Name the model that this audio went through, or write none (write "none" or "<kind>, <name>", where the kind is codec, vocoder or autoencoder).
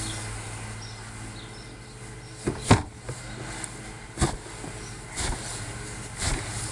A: none